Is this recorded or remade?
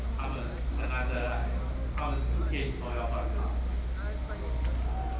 recorded